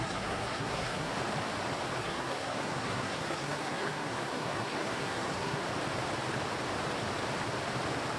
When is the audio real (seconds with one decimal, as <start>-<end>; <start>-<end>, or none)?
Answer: 1.1-2.0; 5.6-8.2